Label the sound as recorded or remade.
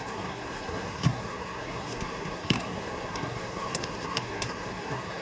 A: remade